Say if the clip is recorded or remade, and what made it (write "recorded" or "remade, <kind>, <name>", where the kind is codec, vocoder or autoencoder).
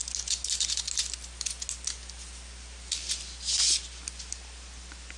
recorded